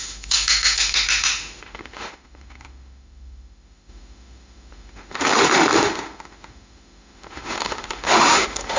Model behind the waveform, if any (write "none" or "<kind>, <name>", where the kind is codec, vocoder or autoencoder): autoencoder, DAC-VAE